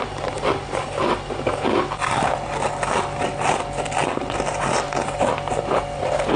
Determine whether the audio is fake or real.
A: real